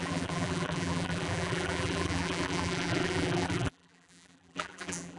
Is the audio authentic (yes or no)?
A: no